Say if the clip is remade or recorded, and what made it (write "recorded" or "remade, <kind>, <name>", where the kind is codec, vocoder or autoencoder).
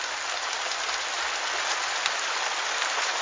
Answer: recorded